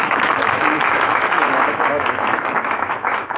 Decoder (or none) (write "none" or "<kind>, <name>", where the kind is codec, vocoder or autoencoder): autoencoder, DAC-VAE